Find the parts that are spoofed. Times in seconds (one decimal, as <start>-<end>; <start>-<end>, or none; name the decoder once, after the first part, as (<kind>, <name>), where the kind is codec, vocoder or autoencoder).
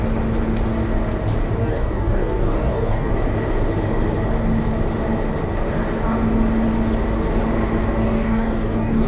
1.6-3.1 (codec, DAC); 8.0-9.1